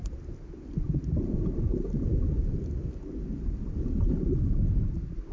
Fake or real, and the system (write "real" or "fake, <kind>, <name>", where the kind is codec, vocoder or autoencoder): real